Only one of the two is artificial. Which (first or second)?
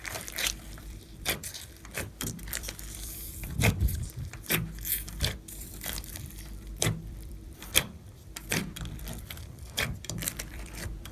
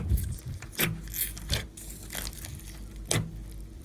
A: first